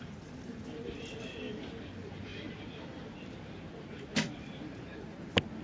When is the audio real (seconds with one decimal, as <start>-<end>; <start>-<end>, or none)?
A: 0.0-5.6